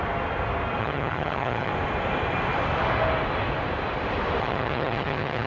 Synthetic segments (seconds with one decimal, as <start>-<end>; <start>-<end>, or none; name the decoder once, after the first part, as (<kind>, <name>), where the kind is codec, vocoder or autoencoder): 0.8-1.7 (vocoder, HiFi-GAN); 4.4-5.5